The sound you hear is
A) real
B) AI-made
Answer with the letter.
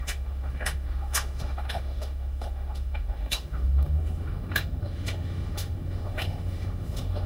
B